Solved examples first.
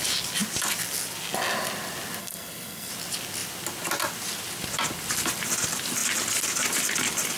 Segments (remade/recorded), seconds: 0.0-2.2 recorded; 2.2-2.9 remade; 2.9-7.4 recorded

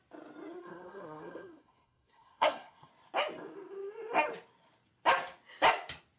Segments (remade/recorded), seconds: 0.0-0.6 recorded; 0.6-2.9 remade; 2.9-6.2 recorded

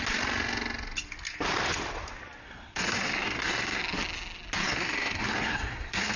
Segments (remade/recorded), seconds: 0.0-2.4 recorded; 2.4-3.8 remade; 3.8-4.6 recorded; 4.6-6.2 remade

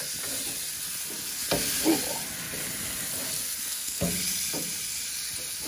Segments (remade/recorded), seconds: 0.0-3.6 recorded; 3.6-4.1 remade; 4.1-5.7 recorded

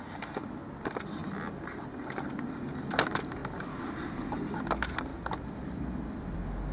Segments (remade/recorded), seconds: 0.0-6.7 recorded

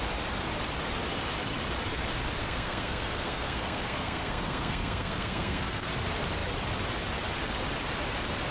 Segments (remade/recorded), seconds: 0.0-2.4 recorded; 2.4-5.9 remade; 5.9-8.5 recorded

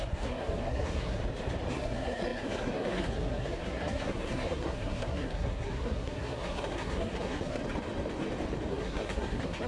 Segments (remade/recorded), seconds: 0.0-1.2 remade; 1.2-1.7 recorded; 1.7-7.6 remade; 7.6-8.7 recorded; 8.7-9.7 remade

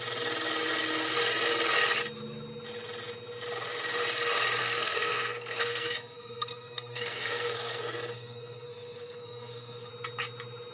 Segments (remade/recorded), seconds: 0.0-4.6 recorded; 4.6-9.9 remade; 9.9-10.7 recorded